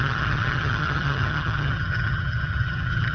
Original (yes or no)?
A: no